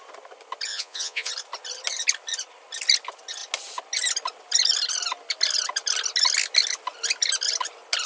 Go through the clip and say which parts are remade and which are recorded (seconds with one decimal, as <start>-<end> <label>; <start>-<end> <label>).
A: 0.0-0.7 recorded; 0.7-1.3 remade; 1.3-8.1 recorded